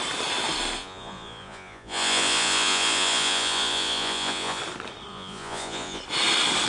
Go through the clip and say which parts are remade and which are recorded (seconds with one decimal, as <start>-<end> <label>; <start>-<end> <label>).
0.0-0.8 recorded; 0.8-4.6 remade; 4.6-5.1 recorded; 5.1-6.0 remade; 6.0-6.7 recorded